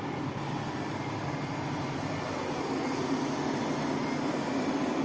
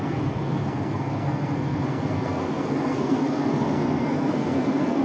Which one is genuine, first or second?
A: first